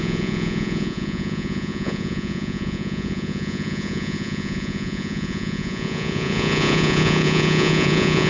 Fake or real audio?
fake